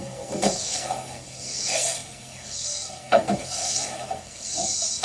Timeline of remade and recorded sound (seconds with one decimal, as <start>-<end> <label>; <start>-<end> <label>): 0.0-5.0 remade